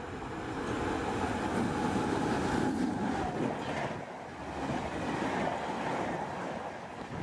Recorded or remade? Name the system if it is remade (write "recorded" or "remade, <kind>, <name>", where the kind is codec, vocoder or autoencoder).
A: recorded